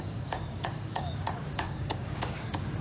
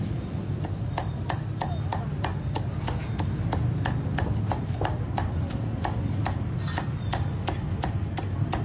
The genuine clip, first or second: second